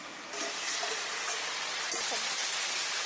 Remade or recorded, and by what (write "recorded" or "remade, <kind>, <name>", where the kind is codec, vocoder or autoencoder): recorded